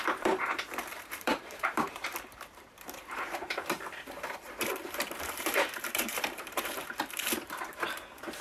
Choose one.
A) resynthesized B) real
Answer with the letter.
A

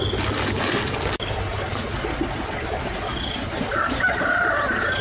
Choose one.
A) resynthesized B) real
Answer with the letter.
B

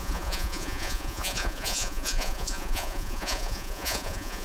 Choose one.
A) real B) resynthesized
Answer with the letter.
B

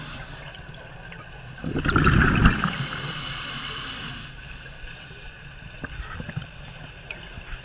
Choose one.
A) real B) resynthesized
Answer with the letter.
A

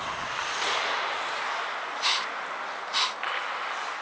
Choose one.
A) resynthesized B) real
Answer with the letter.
B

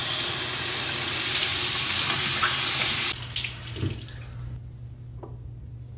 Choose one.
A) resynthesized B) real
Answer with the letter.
B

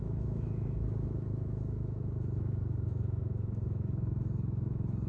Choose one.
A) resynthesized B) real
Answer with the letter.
A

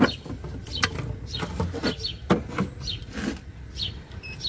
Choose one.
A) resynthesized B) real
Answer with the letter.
A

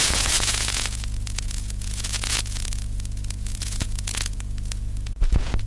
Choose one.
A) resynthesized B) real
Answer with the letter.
A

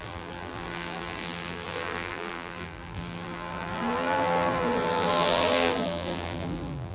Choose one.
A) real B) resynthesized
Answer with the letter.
B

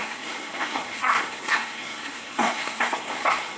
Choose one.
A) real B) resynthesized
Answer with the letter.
B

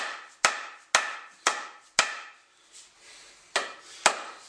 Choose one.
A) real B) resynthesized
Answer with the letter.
A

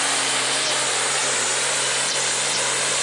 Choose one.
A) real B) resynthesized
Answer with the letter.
A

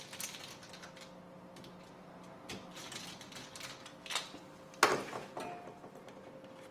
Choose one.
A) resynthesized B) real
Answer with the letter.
B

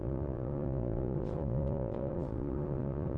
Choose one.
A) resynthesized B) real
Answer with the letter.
A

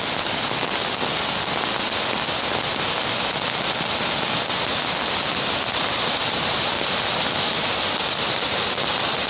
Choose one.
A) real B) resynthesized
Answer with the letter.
A